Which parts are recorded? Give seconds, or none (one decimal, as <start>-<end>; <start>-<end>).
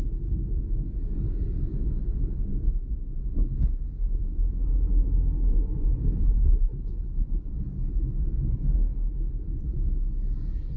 0.0-6.0; 7.5-10.8